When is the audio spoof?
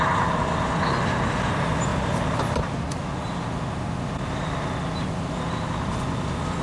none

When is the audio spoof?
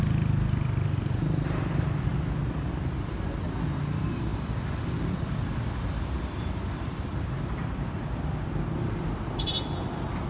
4.3-8.0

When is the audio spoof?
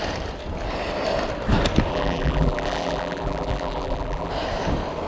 1.9-4.3